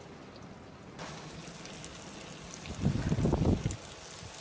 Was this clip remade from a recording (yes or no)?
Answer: no